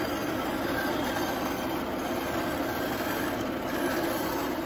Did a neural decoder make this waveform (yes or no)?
no